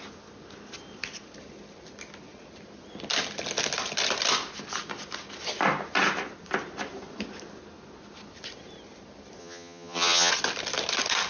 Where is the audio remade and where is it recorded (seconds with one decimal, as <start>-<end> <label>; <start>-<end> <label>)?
0.0-9.4 recorded; 9.4-10.3 remade; 10.3-11.3 recorded